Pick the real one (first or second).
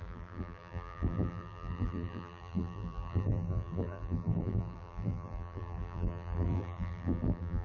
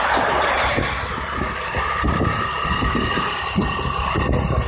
second